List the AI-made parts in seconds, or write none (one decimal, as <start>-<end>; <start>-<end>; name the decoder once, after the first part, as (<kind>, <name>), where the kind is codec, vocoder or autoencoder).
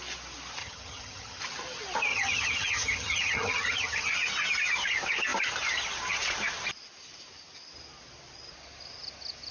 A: 0.6-1.4 (vocoder, HiFi-GAN); 2.1-4.1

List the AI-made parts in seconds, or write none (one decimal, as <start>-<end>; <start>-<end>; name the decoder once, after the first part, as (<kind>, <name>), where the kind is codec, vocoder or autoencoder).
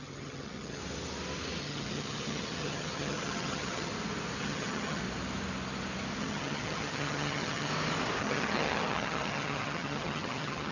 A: 0.0-0.8 (vocoder, HiFi-GAN); 1.6-3.9; 4.4-5.0; 6.2-7.7; 8.2-10.7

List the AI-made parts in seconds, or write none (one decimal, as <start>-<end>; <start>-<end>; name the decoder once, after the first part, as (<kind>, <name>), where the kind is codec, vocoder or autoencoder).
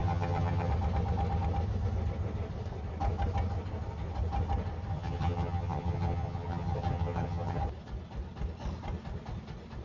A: 0.0-0.7 (vocoder, HiFi-GAN); 4.9-7.6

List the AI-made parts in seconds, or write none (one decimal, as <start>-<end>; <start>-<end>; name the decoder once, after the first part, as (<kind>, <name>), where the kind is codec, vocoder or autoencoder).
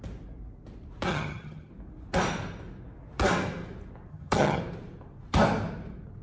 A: 1.1-1.7 (vocoder, HiFi-GAN); 4.1-4.6